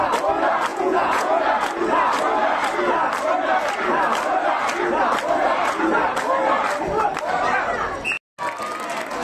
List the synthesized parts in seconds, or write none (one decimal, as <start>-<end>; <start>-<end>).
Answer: 0.7-1.4